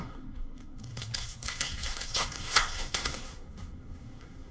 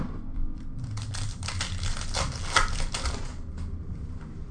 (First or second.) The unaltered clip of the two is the second